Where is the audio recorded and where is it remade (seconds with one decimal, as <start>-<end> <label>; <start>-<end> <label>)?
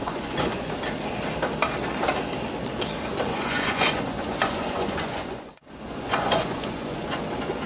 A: 0.0-0.7 remade; 0.7-3.3 recorded; 3.3-7.2 remade; 7.2-7.7 recorded